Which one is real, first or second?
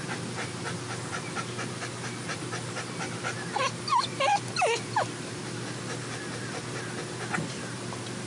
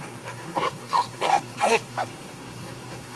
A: first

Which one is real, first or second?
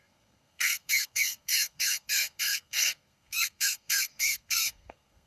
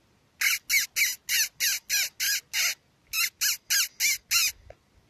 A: second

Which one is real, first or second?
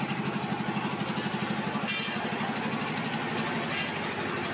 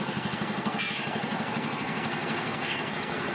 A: first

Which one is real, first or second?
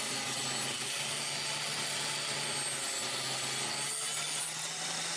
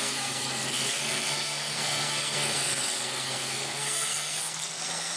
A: first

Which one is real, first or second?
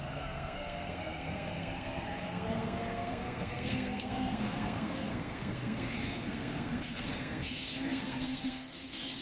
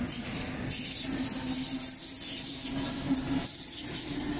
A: second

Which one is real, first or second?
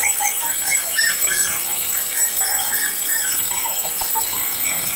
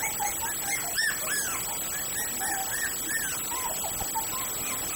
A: second